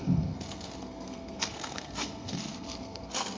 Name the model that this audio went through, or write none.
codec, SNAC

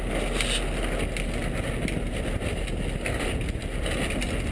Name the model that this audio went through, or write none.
none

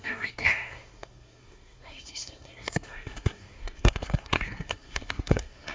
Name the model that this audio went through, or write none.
codec, SNAC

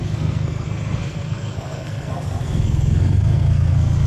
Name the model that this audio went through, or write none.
codec, SNAC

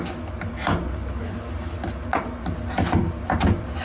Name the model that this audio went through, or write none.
none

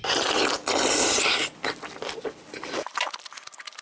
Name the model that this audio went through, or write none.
none